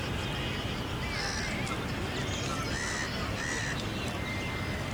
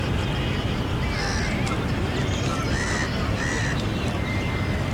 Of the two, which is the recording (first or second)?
first